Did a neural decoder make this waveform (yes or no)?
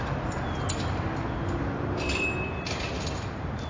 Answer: no